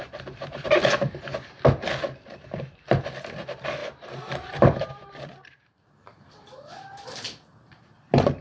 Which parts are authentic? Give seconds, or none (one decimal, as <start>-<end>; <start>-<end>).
0.9-3.8; 7.8-8.4